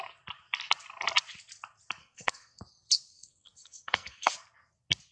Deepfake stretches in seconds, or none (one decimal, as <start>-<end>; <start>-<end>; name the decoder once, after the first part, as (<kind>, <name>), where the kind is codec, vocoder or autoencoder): 2.0-2.6 (codec, SNAC); 3.1-4.3